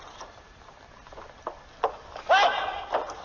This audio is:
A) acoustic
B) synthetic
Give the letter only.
A